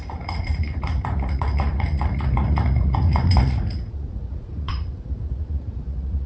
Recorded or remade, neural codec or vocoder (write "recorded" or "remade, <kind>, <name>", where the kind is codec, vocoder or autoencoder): remade, vocoder, Vocos